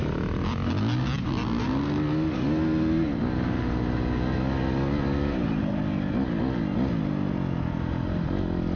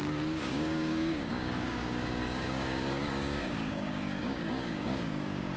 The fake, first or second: second